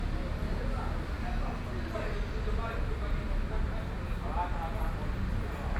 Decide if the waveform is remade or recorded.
recorded